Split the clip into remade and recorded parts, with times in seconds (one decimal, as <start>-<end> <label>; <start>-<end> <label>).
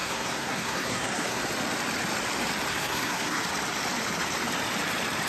0.0-1.4 remade; 1.4-2.7 recorded; 2.7-3.4 remade; 3.4-5.3 recorded